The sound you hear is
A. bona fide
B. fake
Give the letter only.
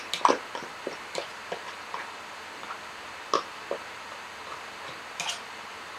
A